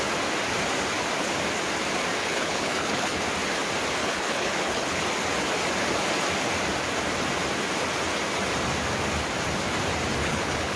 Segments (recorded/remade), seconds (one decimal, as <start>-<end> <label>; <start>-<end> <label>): 0.0-2.2 recorded; 2.2-3.2 remade; 3.2-4.0 recorded; 4.0-5.0 remade; 5.0-10.2 recorded; 10.2-10.8 remade